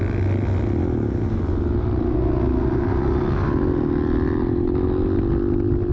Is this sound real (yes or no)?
yes